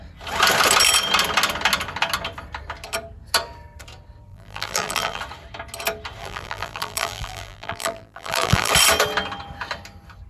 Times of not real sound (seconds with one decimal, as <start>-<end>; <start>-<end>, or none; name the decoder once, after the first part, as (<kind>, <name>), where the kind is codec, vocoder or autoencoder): 4.3-5.2 (vocoder, BigVGAN v2); 6.2-8.7